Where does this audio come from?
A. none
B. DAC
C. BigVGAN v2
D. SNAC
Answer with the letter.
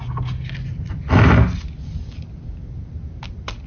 A